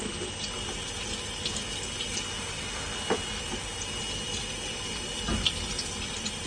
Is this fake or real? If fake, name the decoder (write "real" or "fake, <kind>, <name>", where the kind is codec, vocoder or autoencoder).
real